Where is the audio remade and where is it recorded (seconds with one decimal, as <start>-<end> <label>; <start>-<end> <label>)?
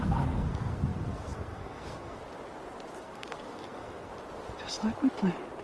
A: 0.0-2.2 remade; 2.2-3.0 recorded; 3.0-4.1 remade; 4.1-5.6 recorded